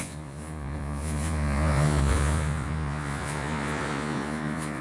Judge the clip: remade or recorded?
remade